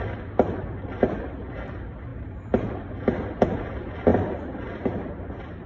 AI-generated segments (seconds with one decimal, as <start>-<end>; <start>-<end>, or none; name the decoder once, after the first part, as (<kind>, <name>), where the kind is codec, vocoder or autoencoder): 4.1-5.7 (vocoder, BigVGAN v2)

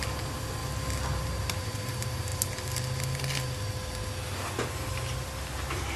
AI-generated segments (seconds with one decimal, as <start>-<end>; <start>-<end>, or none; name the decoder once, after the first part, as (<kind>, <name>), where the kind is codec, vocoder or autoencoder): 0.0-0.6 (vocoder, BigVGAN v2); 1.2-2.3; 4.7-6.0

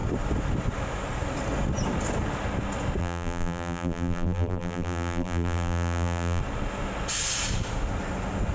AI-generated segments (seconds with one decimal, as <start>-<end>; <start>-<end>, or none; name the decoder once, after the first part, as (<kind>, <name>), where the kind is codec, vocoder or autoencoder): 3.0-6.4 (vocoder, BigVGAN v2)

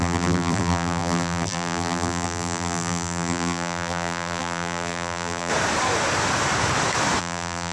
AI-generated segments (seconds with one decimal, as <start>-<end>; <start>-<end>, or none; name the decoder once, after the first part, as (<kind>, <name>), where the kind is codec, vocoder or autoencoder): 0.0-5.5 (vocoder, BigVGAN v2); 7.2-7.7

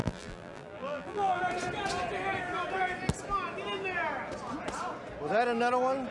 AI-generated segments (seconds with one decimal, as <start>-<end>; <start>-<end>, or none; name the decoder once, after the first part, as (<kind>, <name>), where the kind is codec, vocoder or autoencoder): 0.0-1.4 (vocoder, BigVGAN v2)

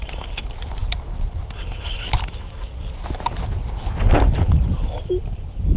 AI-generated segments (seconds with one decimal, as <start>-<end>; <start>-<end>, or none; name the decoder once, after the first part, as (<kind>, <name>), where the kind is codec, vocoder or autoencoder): none